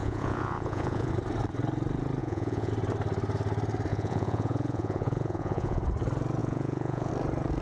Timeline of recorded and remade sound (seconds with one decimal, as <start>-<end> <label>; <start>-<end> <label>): 0.0-1.1 remade; 1.1-2.2 recorded; 2.2-2.7 remade; 2.7-3.9 recorded; 3.9-5.8 remade; 5.8-6.4 recorded; 6.4-7.1 remade; 7.1-7.6 recorded